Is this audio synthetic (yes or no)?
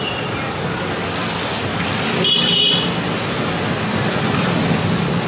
no